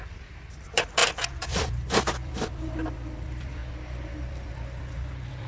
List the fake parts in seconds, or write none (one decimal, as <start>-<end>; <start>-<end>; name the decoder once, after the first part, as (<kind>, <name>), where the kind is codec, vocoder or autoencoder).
0.0-3.6 (vocoder, BigVGAN v2)